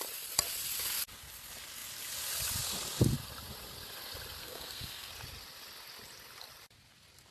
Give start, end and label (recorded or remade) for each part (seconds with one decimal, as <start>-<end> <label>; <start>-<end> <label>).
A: 0.0-4.4 recorded; 4.4-5.1 remade; 5.1-7.3 recorded